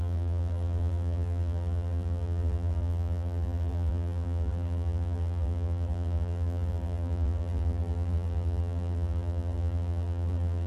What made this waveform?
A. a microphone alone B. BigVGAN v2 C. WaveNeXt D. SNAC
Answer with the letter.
B